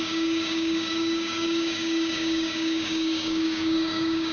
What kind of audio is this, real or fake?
fake